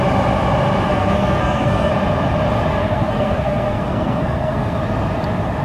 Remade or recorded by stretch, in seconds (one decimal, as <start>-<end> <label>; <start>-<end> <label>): 0.0-0.9 recorded; 0.9-1.9 remade; 1.9-2.7 recorded; 2.7-4.8 remade; 4.8-5.6 recorded